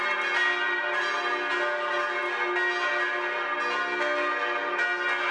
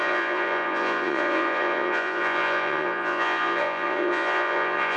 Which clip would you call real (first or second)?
first